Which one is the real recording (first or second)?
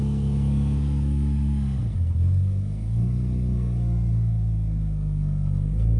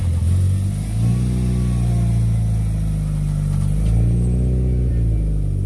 second